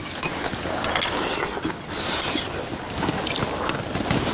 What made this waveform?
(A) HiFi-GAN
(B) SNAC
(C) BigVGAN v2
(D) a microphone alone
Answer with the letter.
D